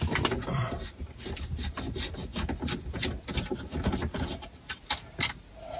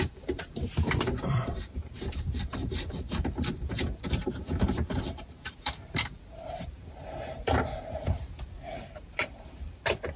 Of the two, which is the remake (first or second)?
second